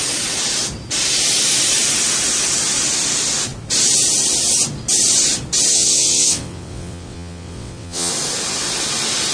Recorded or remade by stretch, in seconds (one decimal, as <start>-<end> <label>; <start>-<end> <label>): 0.0-5.7 recorded; 5.7-8.1 remade; 8.1-9.3 recorded